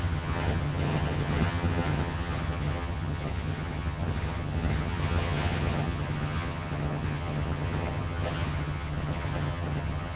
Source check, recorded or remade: remade